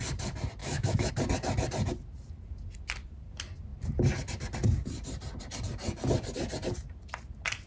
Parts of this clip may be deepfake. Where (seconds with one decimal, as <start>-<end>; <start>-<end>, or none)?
0.6-1.1